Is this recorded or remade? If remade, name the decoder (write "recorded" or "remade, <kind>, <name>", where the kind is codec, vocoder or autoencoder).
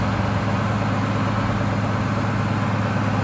recorded